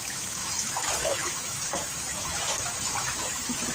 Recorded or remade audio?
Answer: remade